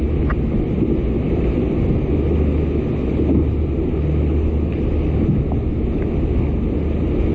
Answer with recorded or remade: recorded